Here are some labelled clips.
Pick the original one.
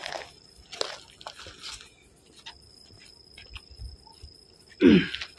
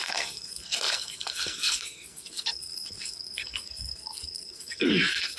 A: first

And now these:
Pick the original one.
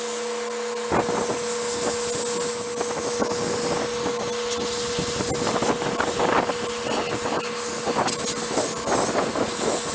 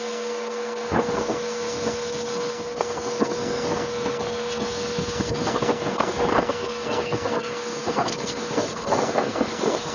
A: first